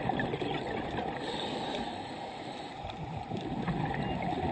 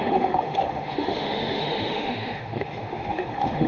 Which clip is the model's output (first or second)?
second